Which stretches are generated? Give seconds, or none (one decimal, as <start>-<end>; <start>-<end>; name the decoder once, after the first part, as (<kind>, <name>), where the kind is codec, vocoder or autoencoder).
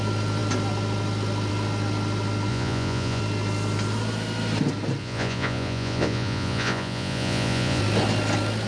2.5-3.2 (vocoder, Vocos); 5.0-7.8